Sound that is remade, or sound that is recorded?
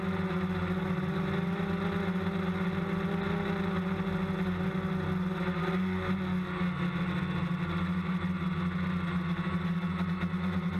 recorded